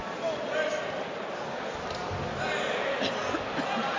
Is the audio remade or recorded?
recorded